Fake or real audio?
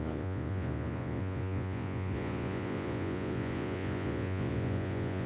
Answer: fake